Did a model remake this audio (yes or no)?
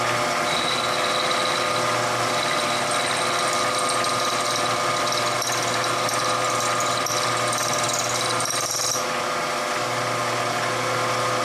no